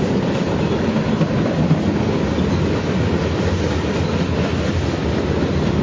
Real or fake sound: real